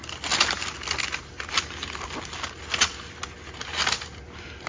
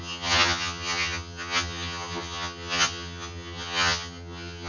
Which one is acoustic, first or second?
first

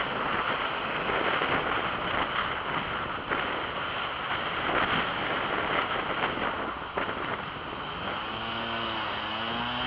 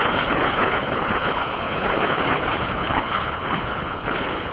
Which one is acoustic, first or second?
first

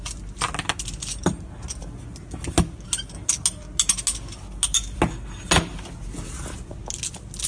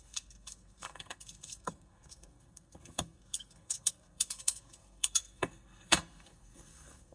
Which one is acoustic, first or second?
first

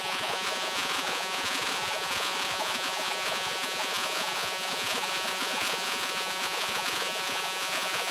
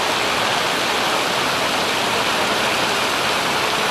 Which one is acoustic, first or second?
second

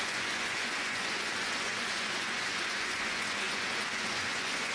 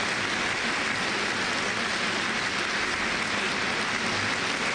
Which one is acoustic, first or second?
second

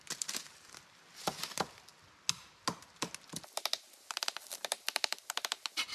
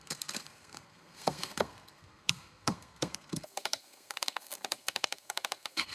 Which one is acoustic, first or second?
first